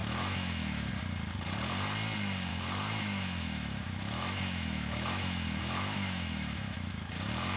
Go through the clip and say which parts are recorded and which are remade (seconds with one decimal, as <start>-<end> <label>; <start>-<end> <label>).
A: 0.0-0.9 remade; 0.9-2.5 recorded; 2.5-7.1 remade; 7.1-7.6 recorded